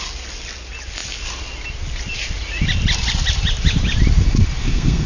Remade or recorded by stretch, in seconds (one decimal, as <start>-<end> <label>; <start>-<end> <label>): 0.0-4.6 recorded; 4.6-5.1 remade